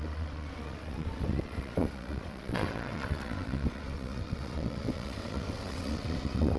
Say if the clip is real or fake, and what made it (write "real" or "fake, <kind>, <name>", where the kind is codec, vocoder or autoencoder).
fake, vocoder, WaveNeXt